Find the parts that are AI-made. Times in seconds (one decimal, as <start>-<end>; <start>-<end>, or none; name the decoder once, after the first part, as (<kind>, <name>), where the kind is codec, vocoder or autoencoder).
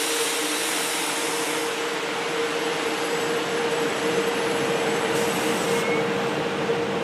0.6-1.1 (vocoder, BigVGAN v2)